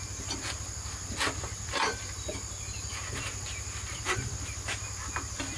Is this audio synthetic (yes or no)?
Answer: no